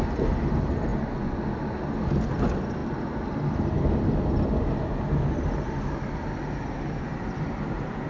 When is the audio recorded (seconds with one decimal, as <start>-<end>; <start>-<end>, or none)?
0.0-0.9; 1.4-8.1